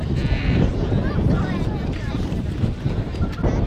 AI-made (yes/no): yes